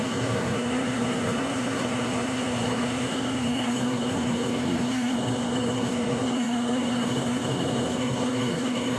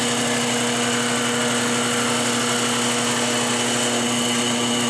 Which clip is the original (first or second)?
second